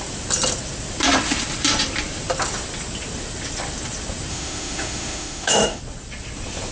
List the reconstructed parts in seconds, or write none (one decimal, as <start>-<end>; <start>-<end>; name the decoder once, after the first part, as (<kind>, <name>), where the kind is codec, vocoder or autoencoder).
4.3-5.8 (autoencoder, DAC-VAE)